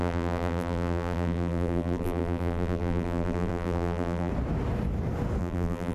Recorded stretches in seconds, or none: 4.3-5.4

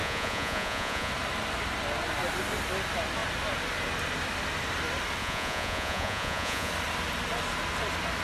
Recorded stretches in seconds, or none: 1.1-5.2; 6.7-8.2

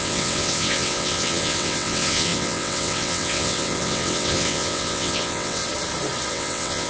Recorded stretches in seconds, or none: 5.6-6.3

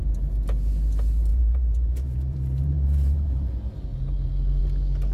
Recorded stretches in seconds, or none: 0.0-1.3; 3.5-5.1

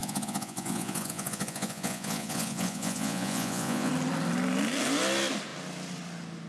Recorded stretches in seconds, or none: 3.9-6.5

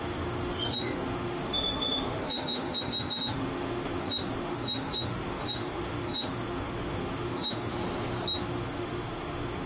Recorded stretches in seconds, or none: 7.7-8.4

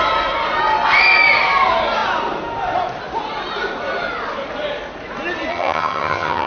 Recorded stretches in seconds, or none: 0.0-5.5

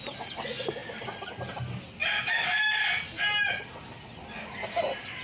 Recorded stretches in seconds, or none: 0.0-5.2